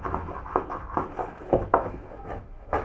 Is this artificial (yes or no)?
yes